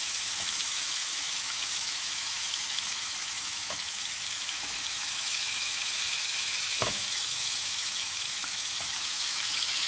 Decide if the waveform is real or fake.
fake